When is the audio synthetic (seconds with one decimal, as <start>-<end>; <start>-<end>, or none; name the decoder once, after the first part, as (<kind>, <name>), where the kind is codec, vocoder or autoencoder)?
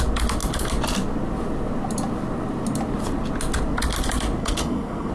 4.4-5.1 (codec, SNAC)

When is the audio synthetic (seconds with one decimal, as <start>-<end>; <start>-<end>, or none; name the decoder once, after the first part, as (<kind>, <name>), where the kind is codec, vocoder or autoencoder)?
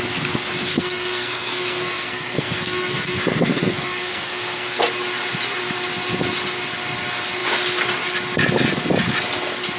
0.7-4.8 (codec, SNAC)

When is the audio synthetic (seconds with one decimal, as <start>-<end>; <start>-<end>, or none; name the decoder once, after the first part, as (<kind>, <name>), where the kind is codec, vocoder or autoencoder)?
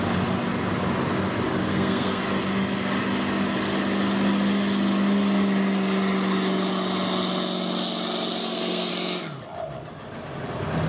1.7-2.2 (codec, SNAC); 8.4-8.9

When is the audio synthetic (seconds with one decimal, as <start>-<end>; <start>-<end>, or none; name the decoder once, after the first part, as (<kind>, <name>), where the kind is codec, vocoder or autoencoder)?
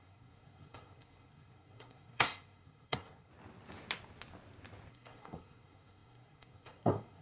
0.0-3.3 (codec, SNAC); 4.9-7.2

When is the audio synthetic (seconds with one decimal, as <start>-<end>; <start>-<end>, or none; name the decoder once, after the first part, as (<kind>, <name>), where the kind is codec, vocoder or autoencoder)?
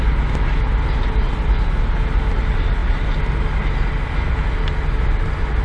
none